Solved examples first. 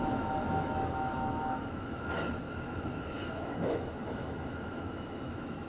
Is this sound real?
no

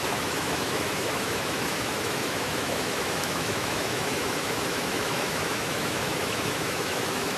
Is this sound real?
no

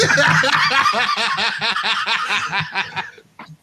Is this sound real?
yes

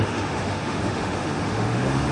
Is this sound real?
no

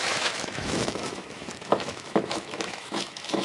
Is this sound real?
no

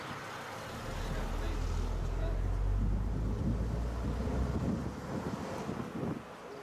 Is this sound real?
yes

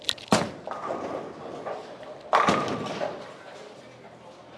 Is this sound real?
yes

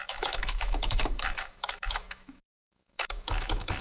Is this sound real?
no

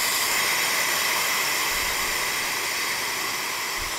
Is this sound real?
yes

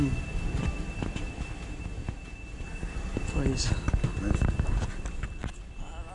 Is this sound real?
yes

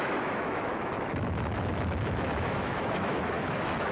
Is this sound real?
no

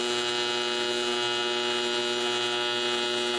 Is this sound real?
yes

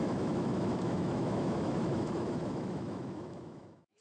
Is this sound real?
no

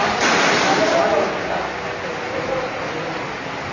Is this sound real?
yes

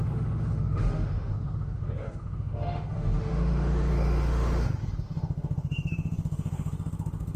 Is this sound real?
no